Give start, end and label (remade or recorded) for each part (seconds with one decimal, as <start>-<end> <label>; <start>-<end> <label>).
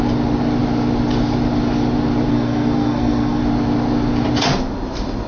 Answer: 0.0-2.3 recorded; 2.3-3.4 remade; 3.4-5.3 recorded